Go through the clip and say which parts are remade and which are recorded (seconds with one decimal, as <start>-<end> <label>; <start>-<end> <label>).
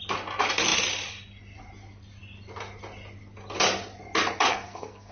0.0-4.5 recorded; 4.5-5.1 remade